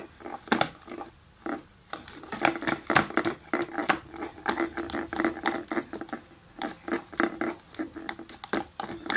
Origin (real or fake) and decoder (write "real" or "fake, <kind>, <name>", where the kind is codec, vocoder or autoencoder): real